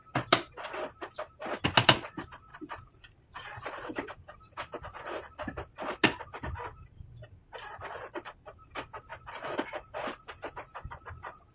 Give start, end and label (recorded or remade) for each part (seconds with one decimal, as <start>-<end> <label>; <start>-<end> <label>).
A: 0.0-2.5 recorded; 2.5-5.0 remade; 5.0-6.7 recorded; 6.7-7.4 remade; 7.4-9.1 recorded; 9.1-9.7 remade; 9.7-11.5 recorded